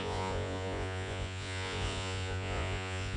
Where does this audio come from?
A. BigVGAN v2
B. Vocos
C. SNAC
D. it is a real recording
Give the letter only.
B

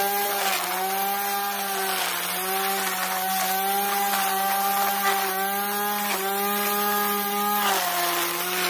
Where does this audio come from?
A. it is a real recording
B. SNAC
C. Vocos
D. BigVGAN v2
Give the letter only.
A